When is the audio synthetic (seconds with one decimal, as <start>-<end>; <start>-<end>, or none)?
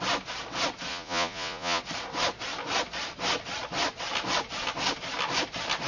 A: 0.9-1.8